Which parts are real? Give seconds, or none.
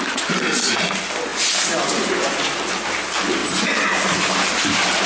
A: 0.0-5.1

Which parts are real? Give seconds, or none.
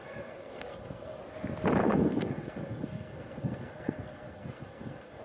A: 1.2-1.8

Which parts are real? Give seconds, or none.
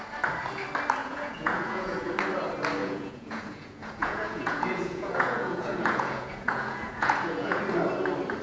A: 0.0-1.0; 2.1-2.8; 7.6-8.4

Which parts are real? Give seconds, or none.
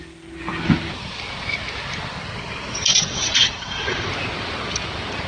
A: 0.0-2.9; 4.1-5.3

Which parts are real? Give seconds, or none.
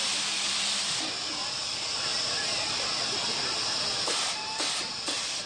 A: 0.0-5.5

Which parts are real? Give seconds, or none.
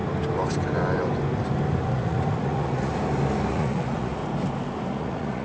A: 0.0-1.9; 2.9-3.5; 4.2-4.9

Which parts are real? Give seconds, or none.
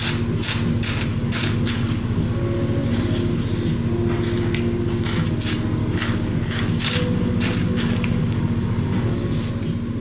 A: 0.0-1.1; 2.3-5.8; 9.5-10.0